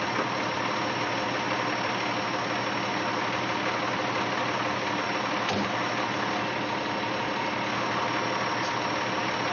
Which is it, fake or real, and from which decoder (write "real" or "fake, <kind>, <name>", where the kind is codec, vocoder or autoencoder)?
real